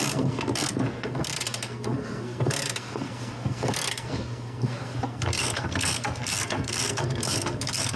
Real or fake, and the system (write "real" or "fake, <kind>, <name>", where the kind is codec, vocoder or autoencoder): fake, codec, SNAC